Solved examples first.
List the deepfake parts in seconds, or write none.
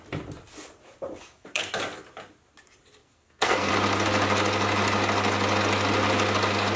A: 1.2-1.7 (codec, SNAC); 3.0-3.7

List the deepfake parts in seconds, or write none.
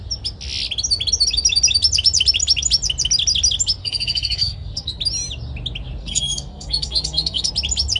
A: 3.8-5.0 (codec, SNAC); 6.0-7.5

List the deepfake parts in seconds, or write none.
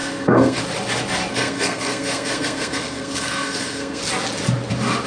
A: 0.0-0.6 (codec, SNAC); 1.3-4.0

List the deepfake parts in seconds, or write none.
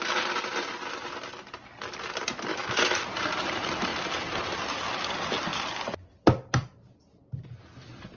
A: 2.5-3.0 (autoencoder, DAC-VAE)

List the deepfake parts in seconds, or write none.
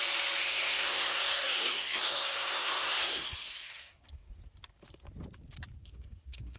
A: 0.4-4.4 (codec, SNAC); 5.8-6.6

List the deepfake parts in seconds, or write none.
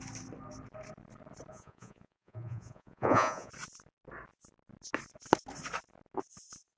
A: 1.5-3.5 (vocoder, Vocos)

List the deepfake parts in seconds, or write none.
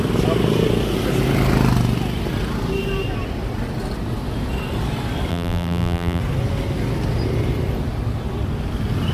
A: 5.3-6.2 (vocoder, BigVGAN v2)